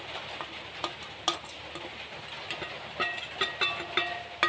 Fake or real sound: real